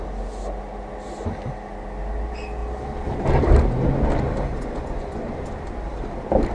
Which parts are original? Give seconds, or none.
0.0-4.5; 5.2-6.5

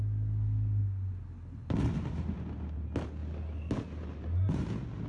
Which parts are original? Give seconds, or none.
0.0-5.1

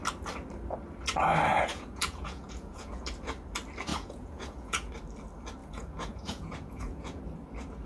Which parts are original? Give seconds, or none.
0.0-1.5; 3.0-3.9; 4.9-5.6; 7.2-7.9